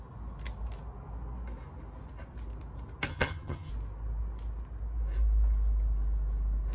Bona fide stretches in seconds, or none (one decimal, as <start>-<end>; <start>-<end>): 0.0-3.1; 3.7-6.7